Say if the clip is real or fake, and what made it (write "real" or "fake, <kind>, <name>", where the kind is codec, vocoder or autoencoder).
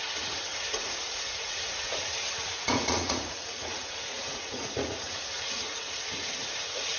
fake, vocoder, Vocos